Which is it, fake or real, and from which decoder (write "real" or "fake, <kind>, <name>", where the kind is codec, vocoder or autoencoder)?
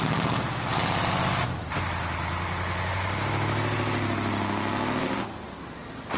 real